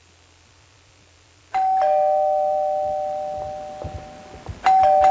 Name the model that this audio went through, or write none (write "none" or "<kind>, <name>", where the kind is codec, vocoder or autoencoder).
none